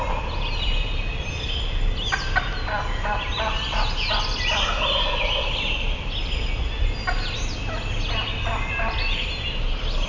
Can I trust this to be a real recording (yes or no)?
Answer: yes